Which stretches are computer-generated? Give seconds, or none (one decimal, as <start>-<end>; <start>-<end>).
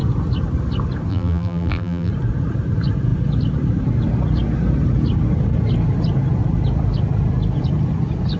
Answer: 1.1-2.1